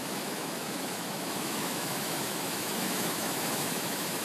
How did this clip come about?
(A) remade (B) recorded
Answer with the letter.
A